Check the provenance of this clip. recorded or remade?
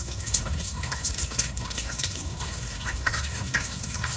remade